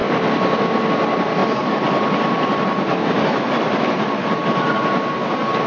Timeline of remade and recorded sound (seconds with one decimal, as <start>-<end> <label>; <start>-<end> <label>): 0.0-0.5 remade; 0.5-1.4 recorded; 1.4-4.8 remade; 4.8-5.7 recorded